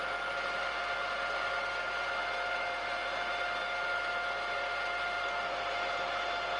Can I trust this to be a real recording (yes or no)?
yes